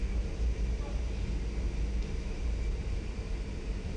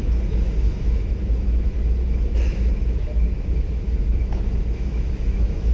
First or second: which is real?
first